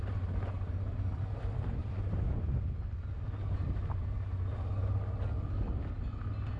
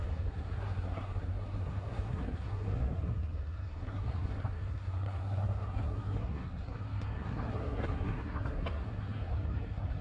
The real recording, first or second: first